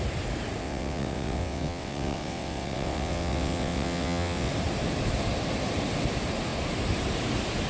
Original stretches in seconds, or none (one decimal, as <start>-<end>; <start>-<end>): 0.0-0.6; 4.5-7.7